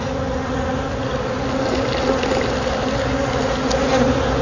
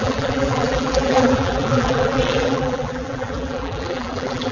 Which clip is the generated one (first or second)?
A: second